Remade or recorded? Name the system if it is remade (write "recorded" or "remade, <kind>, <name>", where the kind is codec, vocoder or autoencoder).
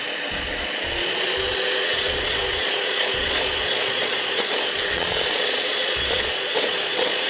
remade, vocoder, Vocos